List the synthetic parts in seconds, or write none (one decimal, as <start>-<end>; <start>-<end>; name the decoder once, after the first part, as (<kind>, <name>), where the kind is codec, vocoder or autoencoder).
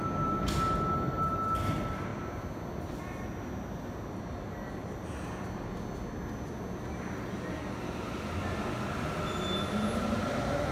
none